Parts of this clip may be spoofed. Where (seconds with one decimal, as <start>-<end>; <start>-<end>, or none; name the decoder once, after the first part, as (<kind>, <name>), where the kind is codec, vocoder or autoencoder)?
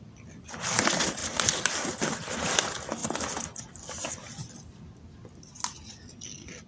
none